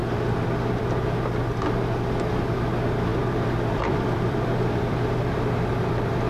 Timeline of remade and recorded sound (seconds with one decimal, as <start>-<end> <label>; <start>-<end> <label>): 0.0-3.1 recorded; 3.1-6.3 remade